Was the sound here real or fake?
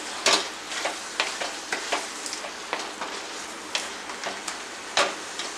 real